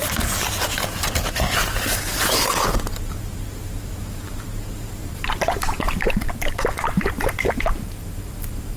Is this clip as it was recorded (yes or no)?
no